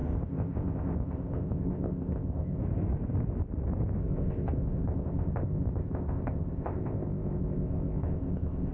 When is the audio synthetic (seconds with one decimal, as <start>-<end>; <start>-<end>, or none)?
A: 0.0-2.6; 4.0-8.7